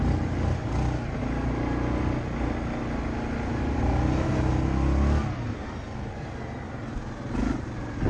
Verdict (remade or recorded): recorded